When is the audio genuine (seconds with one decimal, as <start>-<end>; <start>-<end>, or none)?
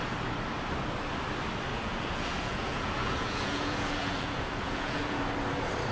0.0-1.7; 5.2-5.9